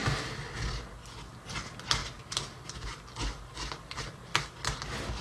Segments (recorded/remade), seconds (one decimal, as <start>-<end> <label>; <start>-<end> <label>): 0.0-5.2 recorded